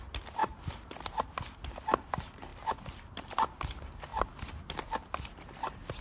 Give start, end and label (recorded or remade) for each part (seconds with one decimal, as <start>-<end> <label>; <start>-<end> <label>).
0.0-6.0 recorded